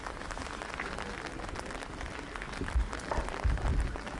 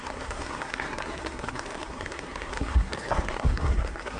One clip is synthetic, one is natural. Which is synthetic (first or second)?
second